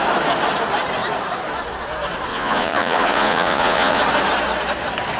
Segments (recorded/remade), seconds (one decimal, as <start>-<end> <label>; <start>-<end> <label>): 0.0-2.3 recorded; 2.3-4.0 remade; 4.0-5.2 recorded